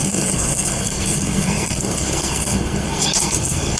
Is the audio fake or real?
fake